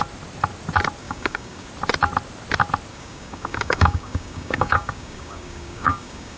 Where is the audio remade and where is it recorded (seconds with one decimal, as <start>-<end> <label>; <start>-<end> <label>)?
0.0-1.0 recorded; 1.0-1.7 remade; 1.7-2.9 recorded; 2.9-6.4 remade